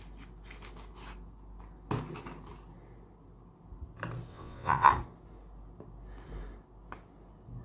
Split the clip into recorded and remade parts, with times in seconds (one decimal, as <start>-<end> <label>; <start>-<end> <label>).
0.0-4.3 recorded; 4.3-4.9 remade; 4.9-7.6 recorded